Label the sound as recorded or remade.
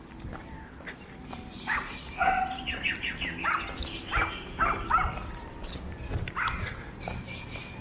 recorded